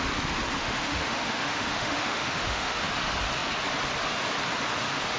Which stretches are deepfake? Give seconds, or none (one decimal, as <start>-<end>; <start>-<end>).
0.6-2.9